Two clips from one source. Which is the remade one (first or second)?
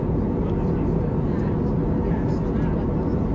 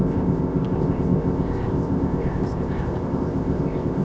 second